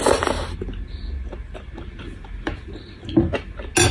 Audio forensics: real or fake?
real